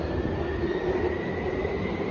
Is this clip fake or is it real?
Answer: real